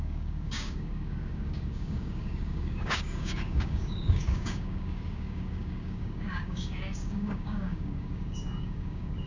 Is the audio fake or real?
fake